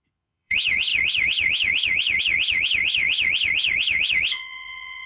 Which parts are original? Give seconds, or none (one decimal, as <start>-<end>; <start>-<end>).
none

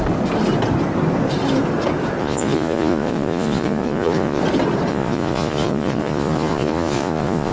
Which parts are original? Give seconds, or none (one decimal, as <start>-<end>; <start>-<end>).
0.0-2.2; 4.4-4.9